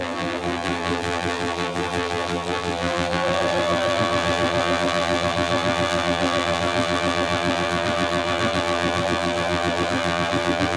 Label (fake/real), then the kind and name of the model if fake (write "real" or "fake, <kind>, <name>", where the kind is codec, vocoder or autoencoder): fake, vocoder, BigVGAN v2